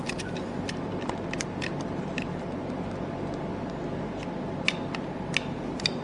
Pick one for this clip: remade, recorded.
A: recorded